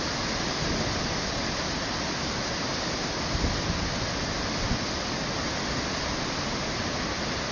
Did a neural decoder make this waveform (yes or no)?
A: no